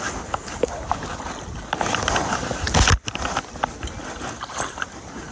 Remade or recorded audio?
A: recorded